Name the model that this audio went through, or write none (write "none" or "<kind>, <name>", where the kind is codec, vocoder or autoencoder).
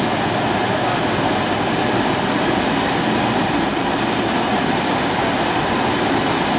none